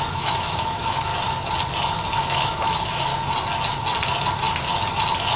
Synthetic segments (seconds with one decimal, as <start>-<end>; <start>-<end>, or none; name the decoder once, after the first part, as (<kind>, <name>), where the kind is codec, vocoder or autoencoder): 0.0-1.1 (autoencoder, DAC-VAE); 2.2-3.1